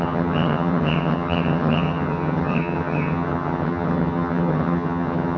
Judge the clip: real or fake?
fake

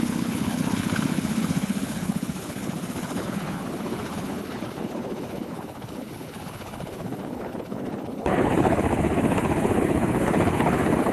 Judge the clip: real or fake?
fake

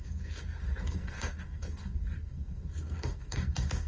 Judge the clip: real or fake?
fake